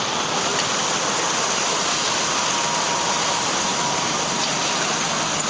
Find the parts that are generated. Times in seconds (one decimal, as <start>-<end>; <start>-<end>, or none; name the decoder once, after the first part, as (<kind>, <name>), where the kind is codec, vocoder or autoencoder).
3.7-5.1 (vocoder, BigVGAN v2)